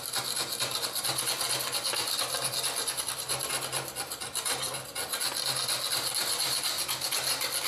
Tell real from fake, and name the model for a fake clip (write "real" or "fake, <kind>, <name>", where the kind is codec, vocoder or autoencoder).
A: real